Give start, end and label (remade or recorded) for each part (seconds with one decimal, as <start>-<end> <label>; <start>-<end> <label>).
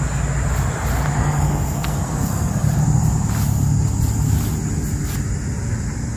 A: 0.0-1.2 recorded; 1.2-2.5 remade; 2.5-6.2 recorded